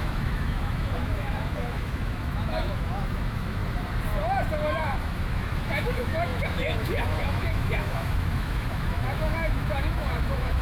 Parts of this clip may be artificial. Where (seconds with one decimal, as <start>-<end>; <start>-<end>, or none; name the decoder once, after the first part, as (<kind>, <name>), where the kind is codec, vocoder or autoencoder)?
0.0-3.6 (autoencoder, DAC-VAE); 4.6-10.6